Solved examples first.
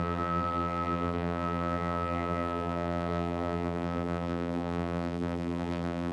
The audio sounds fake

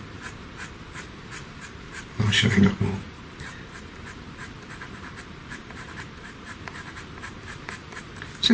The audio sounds fake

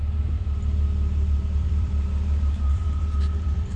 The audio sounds fake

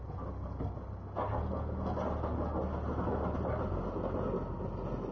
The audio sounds real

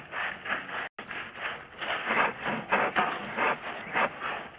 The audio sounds real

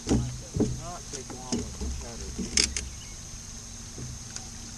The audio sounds real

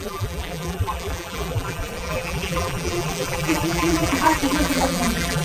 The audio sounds fake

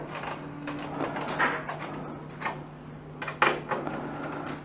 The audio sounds real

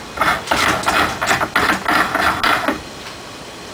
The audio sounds real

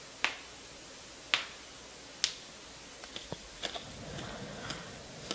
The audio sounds real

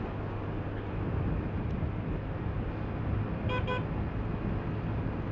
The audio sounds real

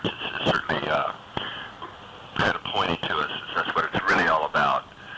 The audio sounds fake